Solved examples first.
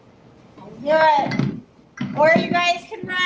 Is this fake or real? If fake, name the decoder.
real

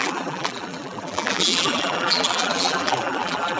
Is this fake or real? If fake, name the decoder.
fake, vocoder, BigVGAN v2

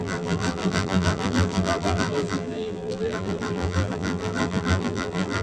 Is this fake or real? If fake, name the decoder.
fake, vocoder, BigVGAN v2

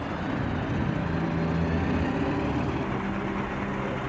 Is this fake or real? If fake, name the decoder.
real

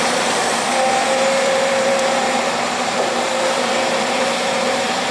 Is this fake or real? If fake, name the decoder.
fake, vocoder, BigVGAN v2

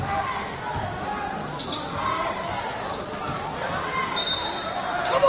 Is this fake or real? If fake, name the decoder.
real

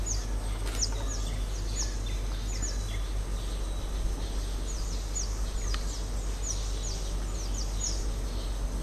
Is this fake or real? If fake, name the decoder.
real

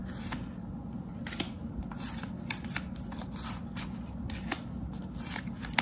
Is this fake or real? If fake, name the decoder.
real